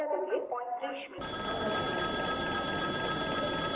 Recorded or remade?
recorded